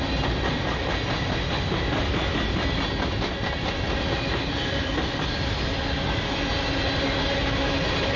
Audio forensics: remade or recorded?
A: recorded